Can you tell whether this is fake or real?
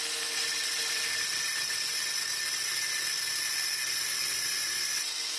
real